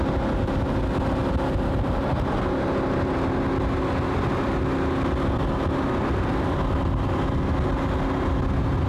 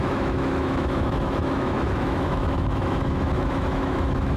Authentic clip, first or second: first